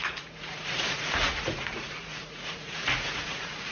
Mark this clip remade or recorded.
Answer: remade